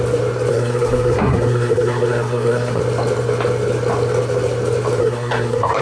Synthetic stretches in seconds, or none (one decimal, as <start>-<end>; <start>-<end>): 0.5-2.8; 5.0-5.8